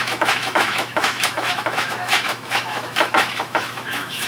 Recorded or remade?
remade